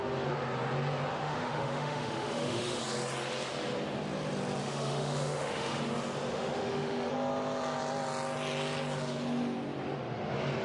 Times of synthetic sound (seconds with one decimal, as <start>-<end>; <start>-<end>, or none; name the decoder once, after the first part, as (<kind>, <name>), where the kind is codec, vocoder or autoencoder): 1.1-2.8 (autoencoder, DAC-VAE); 4.6-5.8; 6.3-7.1